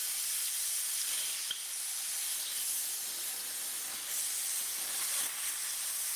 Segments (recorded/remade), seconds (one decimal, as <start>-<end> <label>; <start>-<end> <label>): 0.0-1.1 remade; 1.1-6.2 recorded